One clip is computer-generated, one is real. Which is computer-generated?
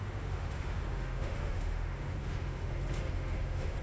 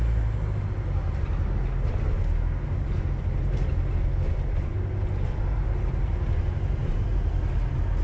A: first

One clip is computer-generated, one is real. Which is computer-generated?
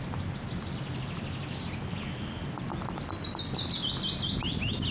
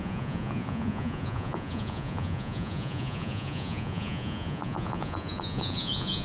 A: second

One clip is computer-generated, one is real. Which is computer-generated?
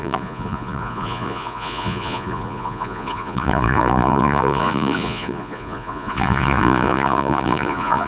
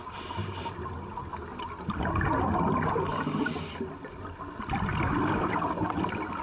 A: first